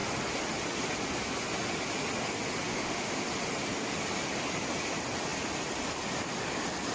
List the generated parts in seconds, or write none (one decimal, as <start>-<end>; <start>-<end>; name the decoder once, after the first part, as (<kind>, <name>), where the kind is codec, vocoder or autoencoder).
2.7-3.2 (autoencoder, DAC-VAE)